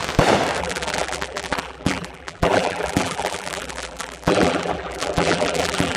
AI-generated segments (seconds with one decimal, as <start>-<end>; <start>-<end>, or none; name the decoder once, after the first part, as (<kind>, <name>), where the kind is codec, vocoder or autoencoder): 0.6-6.0 (vocoder, BigVGAN v2)